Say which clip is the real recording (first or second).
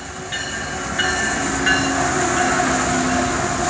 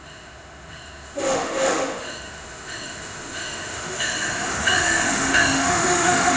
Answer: first